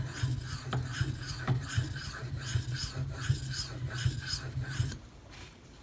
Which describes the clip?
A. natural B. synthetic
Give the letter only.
A